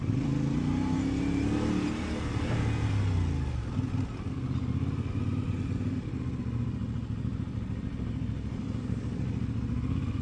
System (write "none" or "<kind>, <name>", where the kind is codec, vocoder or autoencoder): none